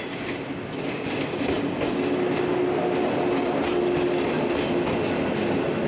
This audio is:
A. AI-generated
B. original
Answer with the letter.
B